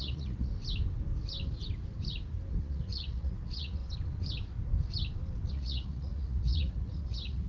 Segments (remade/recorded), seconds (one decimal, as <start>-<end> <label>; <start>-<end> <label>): 0.0-0.5 remade; 0.5-2.6 recorded; 2.6-3.8 remade; 3.8-5.5 recorded; 5.5-7.5 remade